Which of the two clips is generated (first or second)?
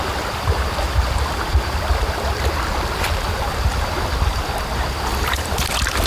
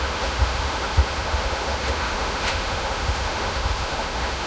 second